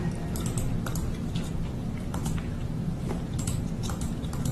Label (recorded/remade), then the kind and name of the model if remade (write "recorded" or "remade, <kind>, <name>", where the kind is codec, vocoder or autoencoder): recorded